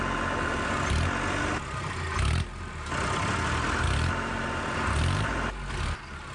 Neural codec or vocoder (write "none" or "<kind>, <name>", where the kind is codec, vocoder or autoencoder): none